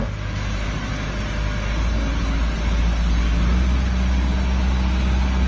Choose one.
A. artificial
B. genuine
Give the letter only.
B